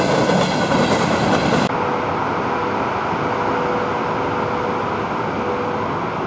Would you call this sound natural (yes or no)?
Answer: yes